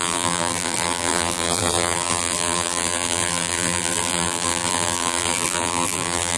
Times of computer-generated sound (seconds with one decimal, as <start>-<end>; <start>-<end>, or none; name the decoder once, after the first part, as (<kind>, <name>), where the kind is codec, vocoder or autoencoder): 0.0-6.4 (vocoder, BigVGAN v2)